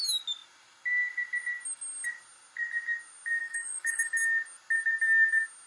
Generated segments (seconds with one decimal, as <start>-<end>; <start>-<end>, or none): 3.4-4.0